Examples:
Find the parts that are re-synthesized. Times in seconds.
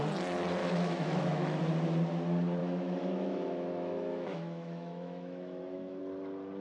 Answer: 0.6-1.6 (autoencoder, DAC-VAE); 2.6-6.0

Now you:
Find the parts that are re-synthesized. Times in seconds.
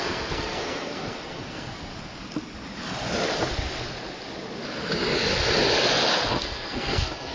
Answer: 0.0-1.9 (codec, SNAC); 6.3-7.3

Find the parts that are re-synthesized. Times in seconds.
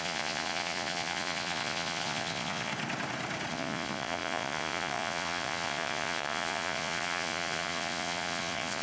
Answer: 0.0-2.7 (vocoder, Vocos); 3.5-8.8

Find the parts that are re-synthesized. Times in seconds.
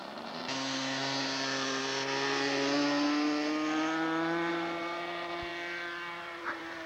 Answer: 0.0-0.4 (vocoder, BigVGAN v2); 4.5-5.5; 6.1-6.9